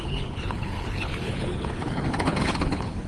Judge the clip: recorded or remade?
remade